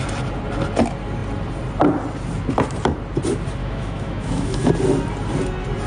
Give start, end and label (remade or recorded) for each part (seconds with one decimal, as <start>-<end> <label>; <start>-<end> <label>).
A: 0.0-3.6 recorded; 3.6-4.7 remade; 4.7-5.9 recorded